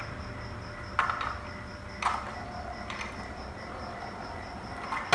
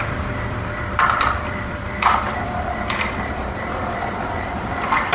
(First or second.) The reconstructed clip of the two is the second